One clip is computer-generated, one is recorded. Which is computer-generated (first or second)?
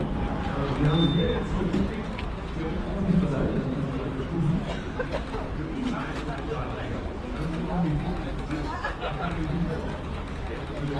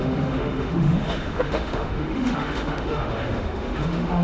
second